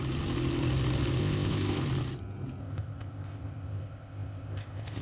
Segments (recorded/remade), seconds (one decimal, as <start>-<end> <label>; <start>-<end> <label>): 0.0-1.2 recorded; 1.2-1.8 remade; 1.8-2.6 recorded; 2.6-5.0 remade